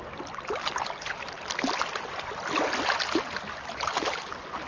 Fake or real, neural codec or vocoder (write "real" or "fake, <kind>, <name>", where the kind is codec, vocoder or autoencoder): real